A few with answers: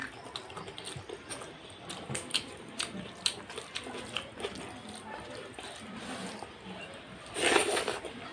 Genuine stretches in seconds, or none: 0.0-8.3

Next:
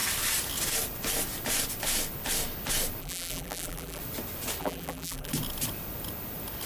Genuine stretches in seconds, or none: 0.0-3.0; 4.0-4.6; 5.3-6.7